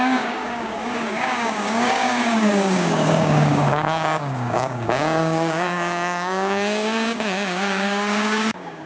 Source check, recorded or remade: remade